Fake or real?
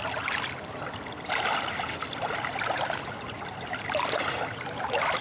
fake